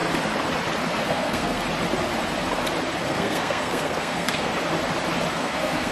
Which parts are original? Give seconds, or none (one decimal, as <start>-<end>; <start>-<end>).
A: 0.0-1.1; 1.6-3.0; 4.5-5.3